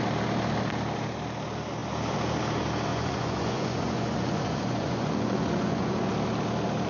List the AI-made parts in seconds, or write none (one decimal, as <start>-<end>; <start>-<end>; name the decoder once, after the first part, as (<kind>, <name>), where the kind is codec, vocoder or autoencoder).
2.9-6.1 (vocoder, Vocos)

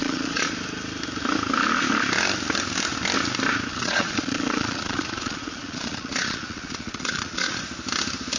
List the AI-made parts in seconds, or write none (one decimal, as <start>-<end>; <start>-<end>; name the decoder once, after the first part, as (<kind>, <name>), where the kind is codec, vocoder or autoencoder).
0.0-0.5 (vocoder, Vocos); 3.7-7.6

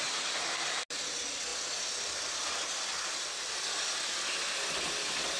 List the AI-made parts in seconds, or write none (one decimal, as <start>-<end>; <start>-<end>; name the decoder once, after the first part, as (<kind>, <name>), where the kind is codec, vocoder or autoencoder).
none

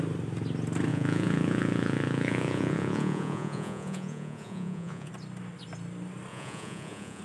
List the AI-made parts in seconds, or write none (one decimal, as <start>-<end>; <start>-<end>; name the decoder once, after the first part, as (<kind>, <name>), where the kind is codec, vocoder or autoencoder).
0.9-5.1 (vocoder, Vocos); 6.3-7.2

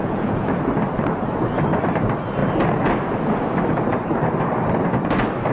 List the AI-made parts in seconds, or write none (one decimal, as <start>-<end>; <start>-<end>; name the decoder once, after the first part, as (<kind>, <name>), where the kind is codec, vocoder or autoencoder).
0.0-0.6 (vocoder, Vocos)

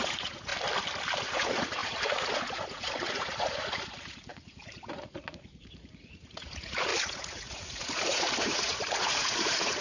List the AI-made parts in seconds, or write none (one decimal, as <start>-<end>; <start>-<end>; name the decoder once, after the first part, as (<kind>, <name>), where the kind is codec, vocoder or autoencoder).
0.0-0.5 (vocoder, Vocos); 1.2-9.8

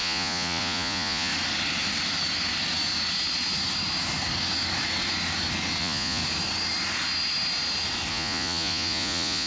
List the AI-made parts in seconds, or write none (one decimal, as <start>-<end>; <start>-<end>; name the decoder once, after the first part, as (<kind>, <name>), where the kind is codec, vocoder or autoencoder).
0.0-1.3 (vocoder, Vocos); 5.8-6.2; 8.1-9.5